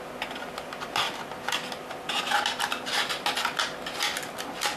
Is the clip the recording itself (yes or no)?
yes